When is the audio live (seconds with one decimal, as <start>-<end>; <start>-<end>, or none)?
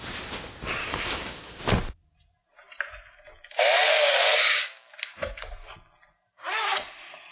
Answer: 0.0-0.8; 1.6-4.1; 4.9-7.3